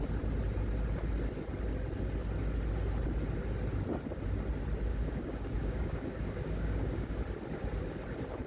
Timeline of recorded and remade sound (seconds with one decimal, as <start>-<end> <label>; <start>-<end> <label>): 0.0-4.9 recorded; 4.9-7.1 remade; 7.1-8.5 recorded